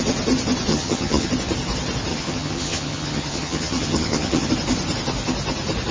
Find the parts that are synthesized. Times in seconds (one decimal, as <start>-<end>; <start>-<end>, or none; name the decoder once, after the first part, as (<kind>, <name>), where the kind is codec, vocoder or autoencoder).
0.7-1.3 (vocoder, HiFi-GAN); 2.1-4.5

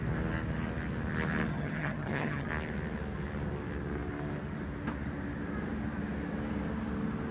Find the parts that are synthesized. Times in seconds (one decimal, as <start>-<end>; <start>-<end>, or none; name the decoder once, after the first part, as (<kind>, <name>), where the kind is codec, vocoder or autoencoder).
1.5-2.5 (vocoder, HiFi-GAN)